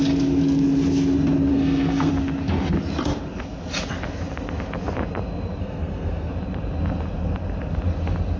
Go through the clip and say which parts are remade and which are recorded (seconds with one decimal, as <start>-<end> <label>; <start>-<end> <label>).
0.0-1.5 recorded; 1.5-2.1 remade; 2.1-5.6 recorded; 5.6-6.3 remade; 6.3-8.4 recorded